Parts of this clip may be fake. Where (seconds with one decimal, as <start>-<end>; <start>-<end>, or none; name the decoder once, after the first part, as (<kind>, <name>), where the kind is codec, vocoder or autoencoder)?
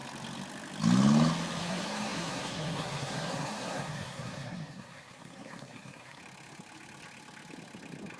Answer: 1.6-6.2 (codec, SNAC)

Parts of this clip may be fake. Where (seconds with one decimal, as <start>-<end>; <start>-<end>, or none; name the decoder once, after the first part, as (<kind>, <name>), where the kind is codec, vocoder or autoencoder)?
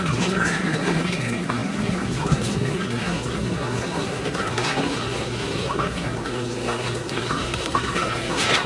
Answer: 0.0-8.7 (codec, SNAC)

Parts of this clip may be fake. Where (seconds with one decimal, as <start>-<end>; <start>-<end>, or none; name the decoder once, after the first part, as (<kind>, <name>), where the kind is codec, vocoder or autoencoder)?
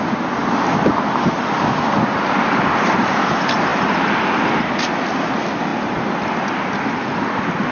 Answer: none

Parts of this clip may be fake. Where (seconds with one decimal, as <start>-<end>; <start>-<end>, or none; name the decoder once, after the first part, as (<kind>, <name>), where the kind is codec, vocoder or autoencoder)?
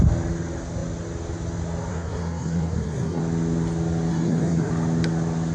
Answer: 1.9-3.2 (codec, SNAC); 4.1-4.7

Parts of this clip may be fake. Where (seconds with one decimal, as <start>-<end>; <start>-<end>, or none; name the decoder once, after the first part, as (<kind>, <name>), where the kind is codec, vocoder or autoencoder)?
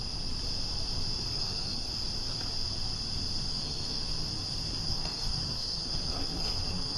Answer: 1.3-1.9 (codec, SNAC); 3.5-4.1; 4.9-7.0